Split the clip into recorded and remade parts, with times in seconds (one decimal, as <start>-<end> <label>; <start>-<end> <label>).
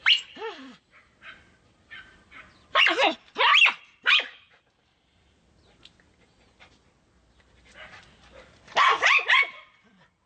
0.0-10.3 recorded